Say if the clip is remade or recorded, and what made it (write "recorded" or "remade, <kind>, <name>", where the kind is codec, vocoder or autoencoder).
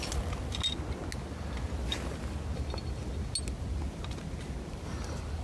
recorded